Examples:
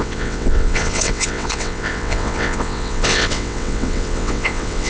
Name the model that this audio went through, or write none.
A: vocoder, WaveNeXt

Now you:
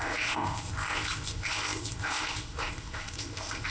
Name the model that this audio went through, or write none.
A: codec, ZipCodec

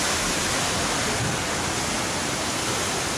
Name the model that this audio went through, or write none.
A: none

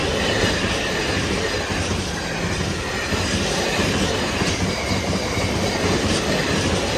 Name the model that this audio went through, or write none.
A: none